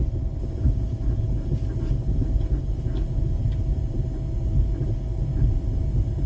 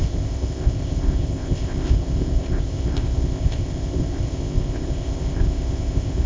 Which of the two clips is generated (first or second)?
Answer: second